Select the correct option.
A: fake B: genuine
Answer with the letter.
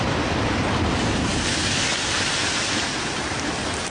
B